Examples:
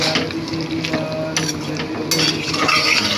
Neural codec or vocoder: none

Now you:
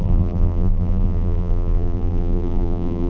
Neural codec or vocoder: vocoder, BigVGAN v2